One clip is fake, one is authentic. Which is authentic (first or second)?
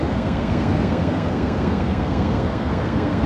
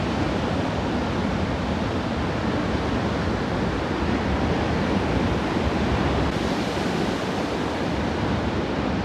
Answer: second